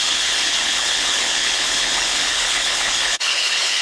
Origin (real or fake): fake